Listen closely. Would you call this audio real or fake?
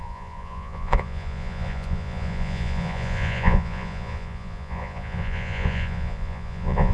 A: fake